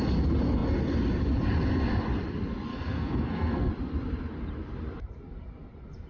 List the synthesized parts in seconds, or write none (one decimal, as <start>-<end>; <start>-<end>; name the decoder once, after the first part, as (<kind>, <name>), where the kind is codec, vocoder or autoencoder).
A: 2.7-3.7 (codec, SNAC)